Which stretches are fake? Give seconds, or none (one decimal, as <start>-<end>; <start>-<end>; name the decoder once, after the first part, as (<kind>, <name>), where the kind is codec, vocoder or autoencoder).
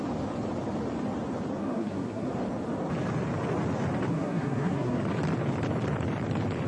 1.6-2.3 (codec, SNAC); 4.1-5.0